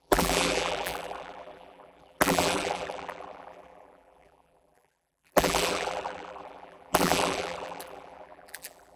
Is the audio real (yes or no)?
no